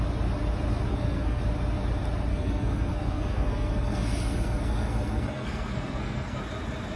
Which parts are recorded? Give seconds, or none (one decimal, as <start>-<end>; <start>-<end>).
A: 0.0-0.9; 1.4-2.3; 6.4-7.0